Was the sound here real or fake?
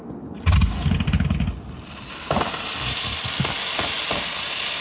real